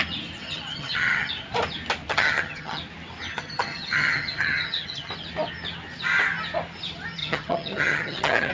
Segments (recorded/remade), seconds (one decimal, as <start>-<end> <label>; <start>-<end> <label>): 0.0-0.4 recorded; 0.4-1.3 remade; 1.3-2.1 recorded; 2.1-2.8 remade; 2.8-3.3 recorded; 3.3-5.1 remade; 5.1-7.2 recorded; 7.2-8.5 remade

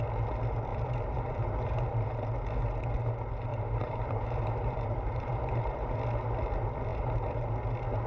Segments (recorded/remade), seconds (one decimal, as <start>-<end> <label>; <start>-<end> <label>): 0.0-0.7 recorded; 0.7-2.1 remade; 2.1-3.5 recorded; 3.5-5.9 remade; 5.9-6.9 recorded; 6.9-7.5 remade; 7.5-8.1 recorded

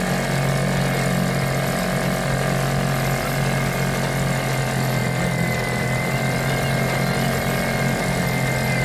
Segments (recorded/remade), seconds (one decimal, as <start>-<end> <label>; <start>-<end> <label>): 0.0-5.0 recorded; 5.0-6.2 remade; 6.2-8.8 recorded

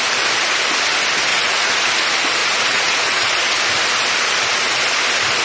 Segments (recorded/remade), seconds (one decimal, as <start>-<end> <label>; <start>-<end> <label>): 0.0-1.3 recorded; 1.3-1.9 remade; 1.9-2.4 recorded; 2.4-3.3 remade; 3.3-5.4 recorded

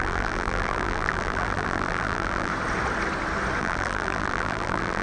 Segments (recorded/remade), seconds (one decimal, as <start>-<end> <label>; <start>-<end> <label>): 0.0-2.5 remade; 2.5-3.6 recorded; 3.6-5.0 remade